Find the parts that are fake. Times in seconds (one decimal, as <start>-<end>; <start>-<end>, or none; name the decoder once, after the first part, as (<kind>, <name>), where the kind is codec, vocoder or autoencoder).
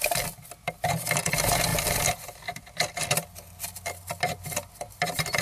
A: none